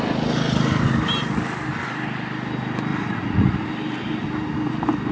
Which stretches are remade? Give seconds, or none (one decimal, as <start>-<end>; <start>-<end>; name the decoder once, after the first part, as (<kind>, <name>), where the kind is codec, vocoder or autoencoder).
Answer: 2.9-3.7 (vocoder, Vocos)